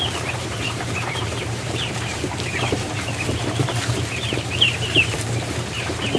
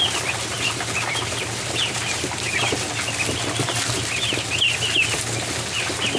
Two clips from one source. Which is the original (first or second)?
second